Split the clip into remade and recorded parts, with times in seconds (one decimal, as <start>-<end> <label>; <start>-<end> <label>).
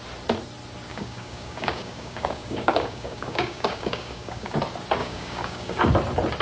0.0-0.9 recorded; 0.9-4.6 remade; 4.6-5.0 recorded; 5.0-5.8 remade; 5.8-6.4 recorded